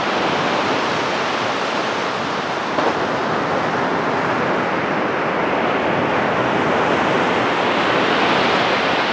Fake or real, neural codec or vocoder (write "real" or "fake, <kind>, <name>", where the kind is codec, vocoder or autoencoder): real